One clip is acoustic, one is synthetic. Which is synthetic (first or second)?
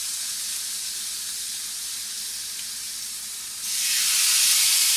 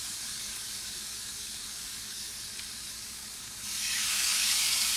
second